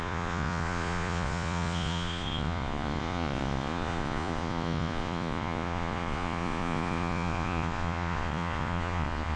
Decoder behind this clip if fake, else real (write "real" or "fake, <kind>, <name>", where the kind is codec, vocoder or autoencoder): fake, vocoder, Vocos